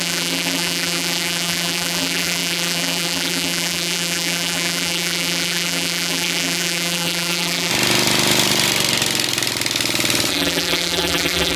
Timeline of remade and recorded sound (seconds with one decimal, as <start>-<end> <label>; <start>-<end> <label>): 0.0-7.7 remade; 7.7-10.3 recorded; 10.3-11.6 remade